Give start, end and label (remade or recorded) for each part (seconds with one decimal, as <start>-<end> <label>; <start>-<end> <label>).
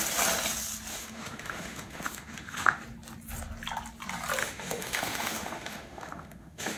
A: 0.0-0.9 recorded; 0.9-2.8 remade; 2.8-4.4 recorded; 4.4-6.8 remade